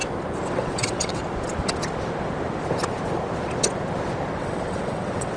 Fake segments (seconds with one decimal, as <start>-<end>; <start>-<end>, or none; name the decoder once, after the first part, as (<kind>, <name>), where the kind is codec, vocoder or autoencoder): 0.5-1.2 (vocoder, WaveNeXt); 4.4-5.4